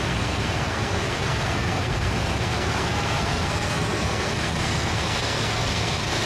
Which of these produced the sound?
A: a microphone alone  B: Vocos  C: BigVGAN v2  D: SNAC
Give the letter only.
D